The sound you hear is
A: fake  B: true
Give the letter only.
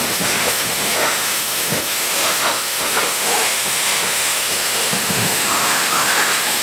A